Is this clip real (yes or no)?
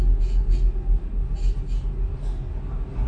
yes